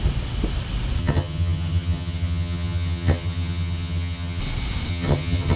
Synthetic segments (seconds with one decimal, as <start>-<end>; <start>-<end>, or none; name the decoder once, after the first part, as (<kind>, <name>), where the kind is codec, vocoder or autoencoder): 1.0-4.4 (vocoder, HiFi-GAN); 4.9-5.6